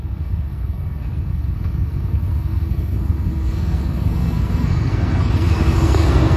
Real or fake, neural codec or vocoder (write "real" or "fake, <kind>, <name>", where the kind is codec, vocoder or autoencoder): fake, codec, SNAC